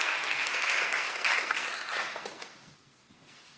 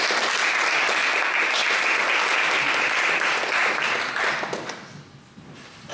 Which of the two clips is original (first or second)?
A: second